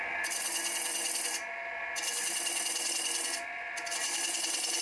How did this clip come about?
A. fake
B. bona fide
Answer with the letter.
B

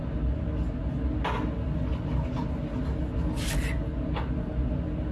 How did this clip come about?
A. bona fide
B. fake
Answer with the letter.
A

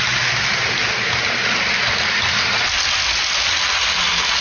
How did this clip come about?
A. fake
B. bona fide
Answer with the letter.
B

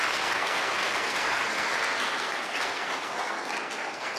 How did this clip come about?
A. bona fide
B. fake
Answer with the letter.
B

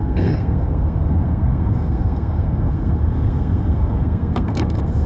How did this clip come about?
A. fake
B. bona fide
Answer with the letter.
A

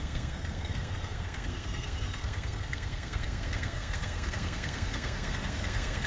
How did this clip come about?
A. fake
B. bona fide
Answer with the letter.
A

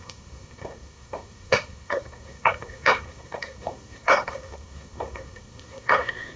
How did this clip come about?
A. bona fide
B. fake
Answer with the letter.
B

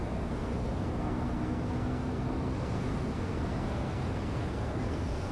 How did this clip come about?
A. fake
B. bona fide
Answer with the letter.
A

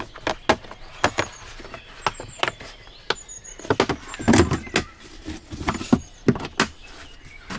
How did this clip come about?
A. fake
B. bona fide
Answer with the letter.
B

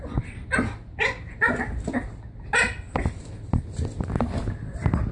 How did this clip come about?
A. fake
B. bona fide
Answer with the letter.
B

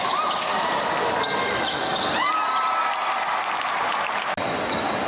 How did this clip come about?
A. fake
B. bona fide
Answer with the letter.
B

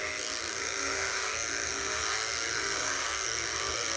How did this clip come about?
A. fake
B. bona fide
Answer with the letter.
A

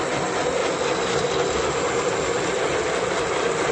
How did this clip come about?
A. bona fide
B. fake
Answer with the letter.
A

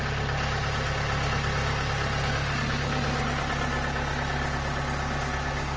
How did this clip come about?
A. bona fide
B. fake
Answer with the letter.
A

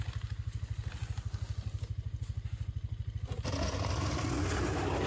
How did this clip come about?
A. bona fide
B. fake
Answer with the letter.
A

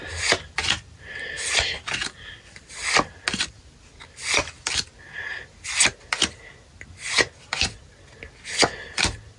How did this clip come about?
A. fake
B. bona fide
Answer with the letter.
B